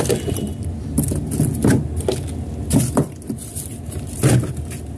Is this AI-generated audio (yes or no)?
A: no